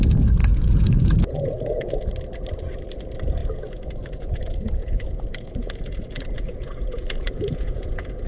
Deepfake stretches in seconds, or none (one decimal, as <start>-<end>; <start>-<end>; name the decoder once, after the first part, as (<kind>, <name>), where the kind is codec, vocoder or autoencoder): 0.4-2.1 (vocoder, Vocos); 3.4-8.3